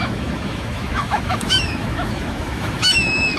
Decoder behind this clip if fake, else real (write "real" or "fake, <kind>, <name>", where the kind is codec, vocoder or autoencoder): fake, autoencoder, DAC-VAE